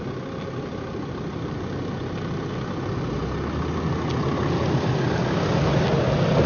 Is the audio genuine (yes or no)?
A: yes